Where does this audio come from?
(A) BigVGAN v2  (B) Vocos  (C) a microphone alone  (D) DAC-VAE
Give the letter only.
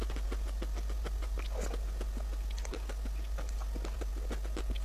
C